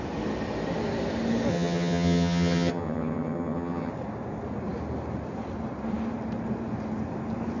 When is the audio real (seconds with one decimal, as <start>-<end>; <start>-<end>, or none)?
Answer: 0.0-1.5; 3.9-7.6